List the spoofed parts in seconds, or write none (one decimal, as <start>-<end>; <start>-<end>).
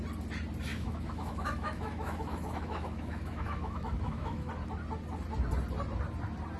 0.7-4.5